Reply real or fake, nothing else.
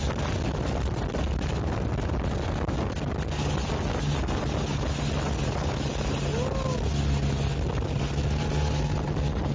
real